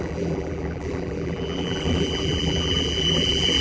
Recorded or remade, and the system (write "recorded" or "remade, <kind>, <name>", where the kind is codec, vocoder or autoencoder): remade, vocoder, BigVGAN v2